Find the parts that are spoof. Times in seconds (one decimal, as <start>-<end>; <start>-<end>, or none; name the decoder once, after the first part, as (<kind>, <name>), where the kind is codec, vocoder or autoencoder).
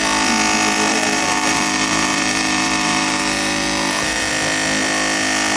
0.9-4.3 (vocoder, BigVGAN v2)